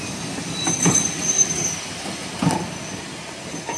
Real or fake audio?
real